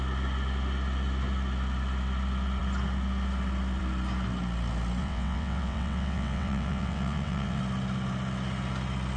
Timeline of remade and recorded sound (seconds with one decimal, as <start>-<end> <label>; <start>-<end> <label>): 0.0-5.0 recorded; 5.0-7.6 remade; 7.6-9.2 recorded

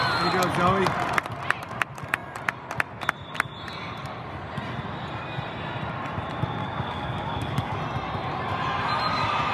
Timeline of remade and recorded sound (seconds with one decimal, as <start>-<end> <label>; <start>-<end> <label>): 0.0-6.6 recorded; 6.6-7.8 remade; 7.8-9.5 recorded

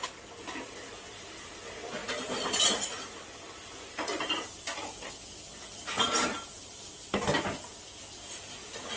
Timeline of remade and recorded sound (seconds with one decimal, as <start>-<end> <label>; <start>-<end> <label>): 0.0-9.0 recorded